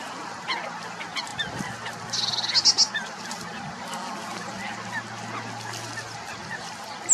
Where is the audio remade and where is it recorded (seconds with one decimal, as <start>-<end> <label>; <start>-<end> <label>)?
0.0-7.1 recorded